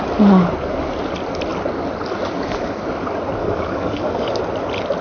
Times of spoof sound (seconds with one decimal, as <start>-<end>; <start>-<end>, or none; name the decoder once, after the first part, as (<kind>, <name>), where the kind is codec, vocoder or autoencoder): 3.4-4.4 (codec, DAC)